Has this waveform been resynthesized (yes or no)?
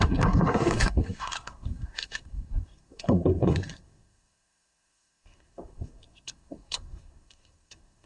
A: yes